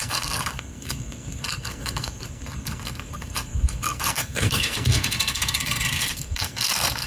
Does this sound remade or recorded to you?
remade